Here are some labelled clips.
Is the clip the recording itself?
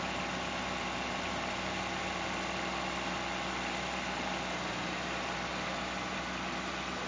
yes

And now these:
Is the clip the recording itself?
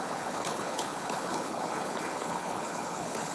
no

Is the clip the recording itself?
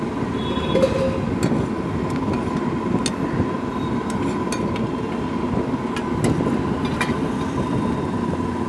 yes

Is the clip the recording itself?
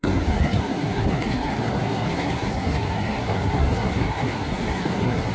no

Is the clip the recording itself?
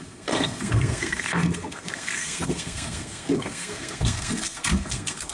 no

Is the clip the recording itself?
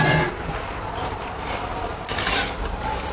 yes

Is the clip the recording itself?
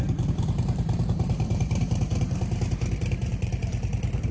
no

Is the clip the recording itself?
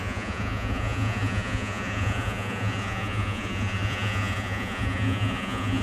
no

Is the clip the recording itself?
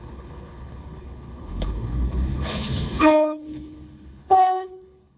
no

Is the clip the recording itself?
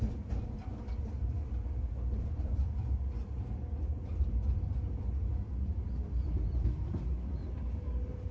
yes